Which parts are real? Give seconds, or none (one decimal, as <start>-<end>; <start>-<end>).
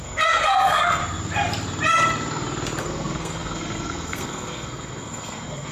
1.0-2.8